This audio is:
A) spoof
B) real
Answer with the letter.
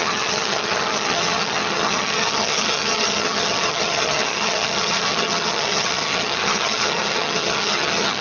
A